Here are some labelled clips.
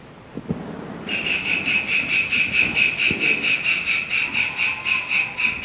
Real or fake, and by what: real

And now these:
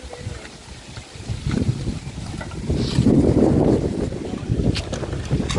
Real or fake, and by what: real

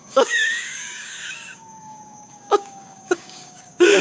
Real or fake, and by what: fake, codec, DAC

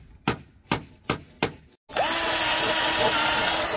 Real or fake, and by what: real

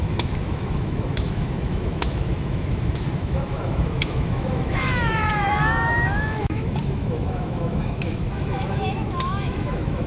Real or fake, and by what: fake, autoencoder, DAC-VAE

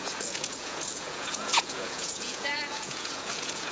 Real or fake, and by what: fake, vocoder, Vocos